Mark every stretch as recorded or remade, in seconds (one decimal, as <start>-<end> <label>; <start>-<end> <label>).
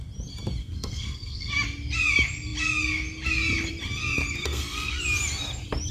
0.0-0.6 recorded; 0.6-1.5 remade; 1.5-4.4 recorded; 4.4-5.0 remade; 5.0-5.9 recorded